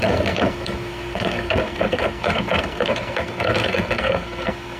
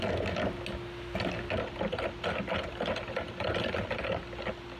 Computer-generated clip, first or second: first